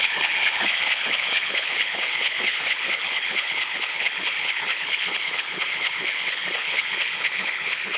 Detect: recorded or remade remade